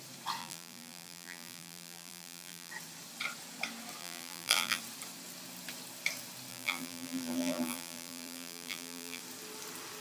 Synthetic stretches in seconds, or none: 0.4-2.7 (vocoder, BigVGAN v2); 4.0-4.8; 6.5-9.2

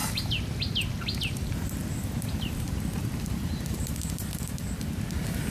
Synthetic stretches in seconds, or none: 0.0-0.6 (vocoder, BigVGAN v2); 1.8-5.1

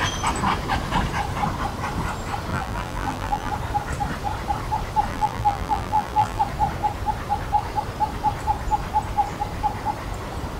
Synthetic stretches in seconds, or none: 2.5-3.5 (vocoder, BigVGAN v2); 5.1-6.4

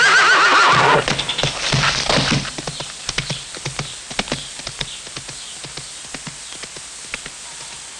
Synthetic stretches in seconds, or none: 0.5-4.9 (vocoder, BigVGAN v2)

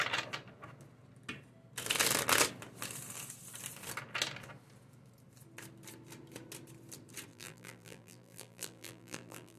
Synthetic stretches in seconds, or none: 7.3-9.6 (vocoder, BigVGAN v2)